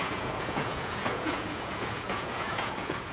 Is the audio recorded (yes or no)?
no